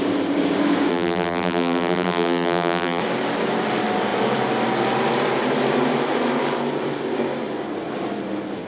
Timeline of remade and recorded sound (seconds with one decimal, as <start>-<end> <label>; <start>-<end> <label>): 0.0-0.9 recorded; 0.9-3.0 remade; 3.0-8.7 recorded